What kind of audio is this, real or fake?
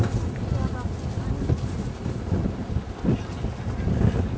real